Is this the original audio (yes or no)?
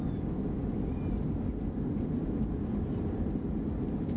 yes